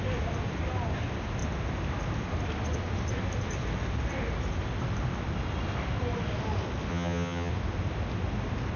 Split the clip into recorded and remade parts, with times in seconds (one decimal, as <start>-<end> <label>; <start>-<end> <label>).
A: 0.0-6.9 recorded; 6.9-7.5 remade; 7.5-8.8 recorded